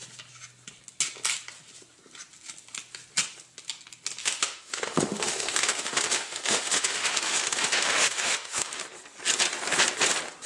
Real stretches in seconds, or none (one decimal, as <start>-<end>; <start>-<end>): 0.0-4.2; 8.8-10.5

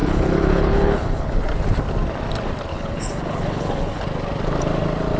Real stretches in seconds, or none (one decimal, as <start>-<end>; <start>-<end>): 1.3-2.7; 4.0-5.2

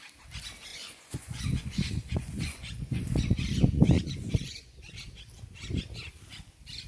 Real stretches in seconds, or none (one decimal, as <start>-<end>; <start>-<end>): 0.0-0.7; 4.8-6.9

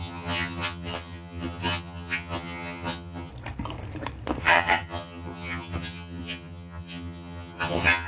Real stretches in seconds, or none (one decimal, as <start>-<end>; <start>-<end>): 3.3-4.4

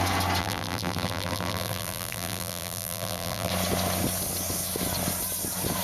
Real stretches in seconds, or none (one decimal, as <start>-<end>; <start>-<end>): 0.0-0.4; 3.5-5.8

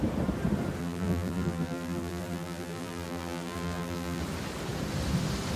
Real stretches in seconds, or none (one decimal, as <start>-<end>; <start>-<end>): 0.0-0.8; 4.2-5.6

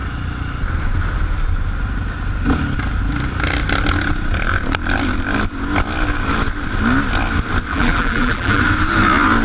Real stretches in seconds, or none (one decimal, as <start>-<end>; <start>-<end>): 0.0-7.7; 8.6-9.4

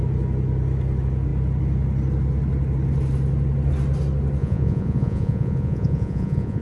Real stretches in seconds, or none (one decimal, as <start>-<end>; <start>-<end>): 0.0-4.4